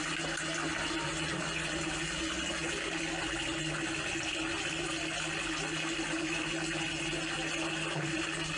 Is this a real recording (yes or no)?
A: yes